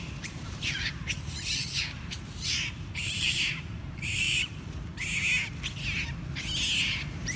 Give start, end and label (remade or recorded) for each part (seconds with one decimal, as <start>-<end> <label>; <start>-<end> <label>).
0.0-4.9 remade; 4.9-6.8 recorded; 6.8-7.4 remade